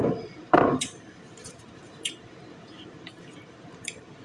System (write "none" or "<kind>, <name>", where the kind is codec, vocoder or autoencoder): vocoder, BigVGAN v2